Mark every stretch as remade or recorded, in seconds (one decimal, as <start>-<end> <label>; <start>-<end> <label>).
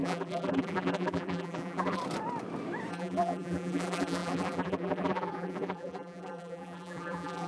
0.0-2.0 remade; 2.0-2.9 recorded; 2.9-7.5 remade